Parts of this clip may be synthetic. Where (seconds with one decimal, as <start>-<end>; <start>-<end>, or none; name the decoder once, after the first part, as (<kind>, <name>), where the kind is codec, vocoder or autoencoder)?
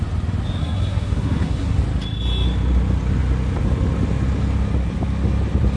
0.6-1.8 (codec, SNAC)